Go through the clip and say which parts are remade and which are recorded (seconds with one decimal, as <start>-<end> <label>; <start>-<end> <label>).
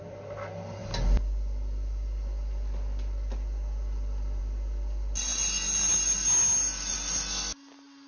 0.0-8.1 recorded